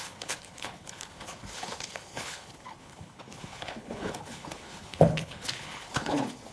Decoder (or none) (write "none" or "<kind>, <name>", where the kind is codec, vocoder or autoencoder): codec, HILCodec